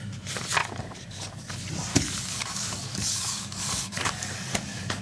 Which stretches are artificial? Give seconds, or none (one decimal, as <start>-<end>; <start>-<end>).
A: 0.6-1.5; 1.9-5.0

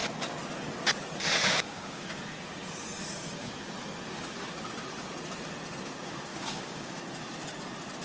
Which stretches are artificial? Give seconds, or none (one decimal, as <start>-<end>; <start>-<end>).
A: 1.4-2.2; 6.3-7.0

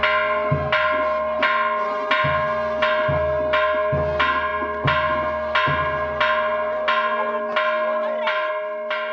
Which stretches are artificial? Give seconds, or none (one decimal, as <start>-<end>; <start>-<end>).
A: none

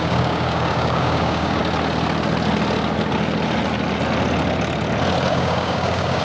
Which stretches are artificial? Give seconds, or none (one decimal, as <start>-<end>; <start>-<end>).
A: 0.0-1.6; 5.3-6.2

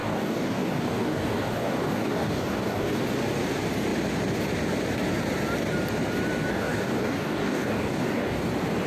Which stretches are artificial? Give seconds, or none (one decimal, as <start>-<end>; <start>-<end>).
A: 0.0-3.0; 6.5-8.5